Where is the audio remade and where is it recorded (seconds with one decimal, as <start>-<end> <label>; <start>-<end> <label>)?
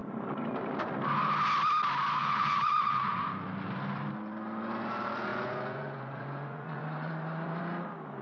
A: 0.0-2.2 recorded; 2.2-3.2 remade; 3.2-5.3 recorded; 5.3-7.6 remade; 7.6-8.2 recorded